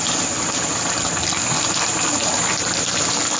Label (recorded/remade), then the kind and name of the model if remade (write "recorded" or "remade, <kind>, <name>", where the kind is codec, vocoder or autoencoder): recorded